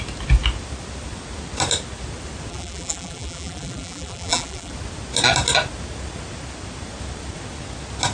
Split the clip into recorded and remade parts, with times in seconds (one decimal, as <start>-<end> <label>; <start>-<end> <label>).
0.0-2.5 recorded; 2.5-4.7 remade; 4.7-8.1 recorded